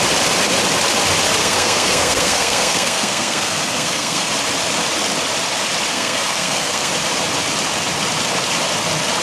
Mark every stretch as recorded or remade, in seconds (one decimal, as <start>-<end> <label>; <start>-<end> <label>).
0.0-1.4 recorded; 1.4-4.3 remade; 4.3-5.9 recorded; 5.9-6.9 remade; 6.9-9.2 recorded